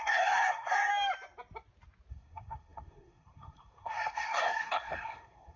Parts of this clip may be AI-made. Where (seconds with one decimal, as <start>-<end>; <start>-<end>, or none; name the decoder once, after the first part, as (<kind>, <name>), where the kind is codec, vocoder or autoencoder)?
0.0-0.9 (codec, SNAC); 2.1-5.6